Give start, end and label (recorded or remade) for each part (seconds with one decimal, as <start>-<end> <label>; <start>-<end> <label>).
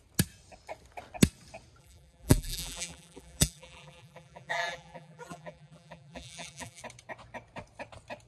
0.0-1.8 recorded; 1.8-6.8 remade; 6.8-8.3 recorded